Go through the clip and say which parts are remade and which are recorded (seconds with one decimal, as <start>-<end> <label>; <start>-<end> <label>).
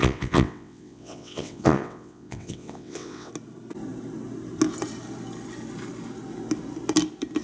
0.0-3.3 remade; 3.3-7.4 recorded